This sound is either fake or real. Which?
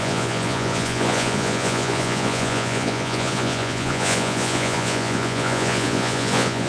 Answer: fake